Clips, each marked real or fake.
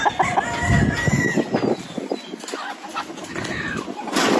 real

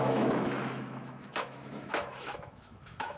fake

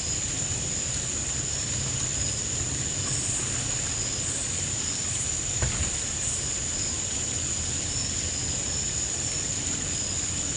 real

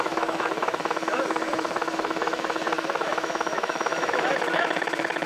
fake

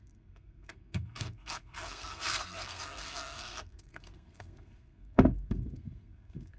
fake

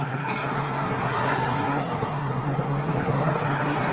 fake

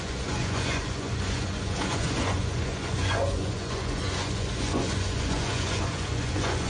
fake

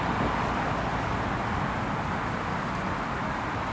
real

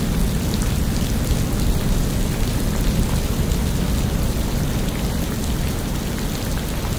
real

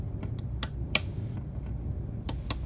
real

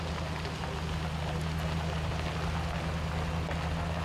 real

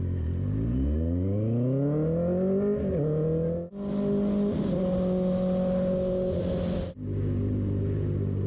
real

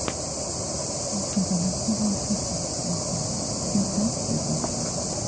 real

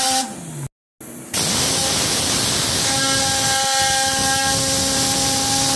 real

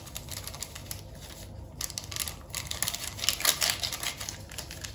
real